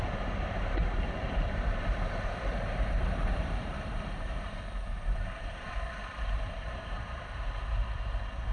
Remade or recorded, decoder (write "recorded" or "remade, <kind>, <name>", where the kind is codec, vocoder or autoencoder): remade, vocoder, BigVGAN v2